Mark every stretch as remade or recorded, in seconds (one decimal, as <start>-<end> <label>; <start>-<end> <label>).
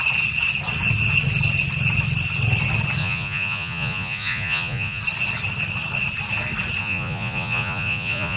0.0-3.0 recorded; 3.0-5.0 remade; 5.0-6.8 recorded; 6.8-8.4 remade